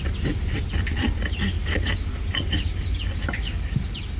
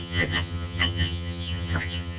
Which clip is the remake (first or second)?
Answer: second